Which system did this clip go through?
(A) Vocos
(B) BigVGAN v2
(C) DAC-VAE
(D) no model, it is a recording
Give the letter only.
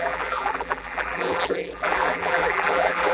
B